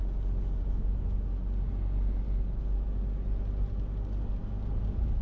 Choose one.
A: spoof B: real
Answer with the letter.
B